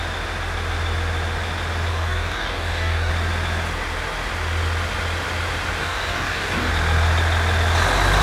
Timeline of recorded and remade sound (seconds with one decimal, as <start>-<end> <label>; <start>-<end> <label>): 0.0-1.9 recorded; 1.9-3.1 remade; 3.1-5.8 recorded; 5.8-6.7 remade; 6.7-8.2 recorded